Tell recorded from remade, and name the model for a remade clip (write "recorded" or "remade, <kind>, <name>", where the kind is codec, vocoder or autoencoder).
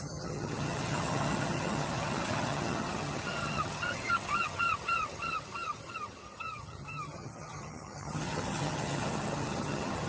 remade, vocoder, HiFi-GAN